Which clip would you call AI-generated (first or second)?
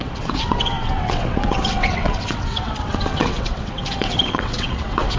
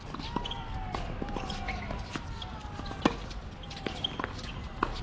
first